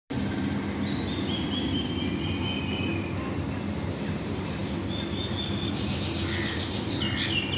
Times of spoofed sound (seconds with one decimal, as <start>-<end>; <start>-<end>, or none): none